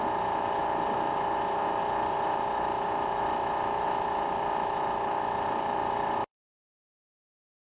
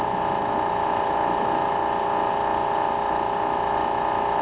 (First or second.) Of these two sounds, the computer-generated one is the first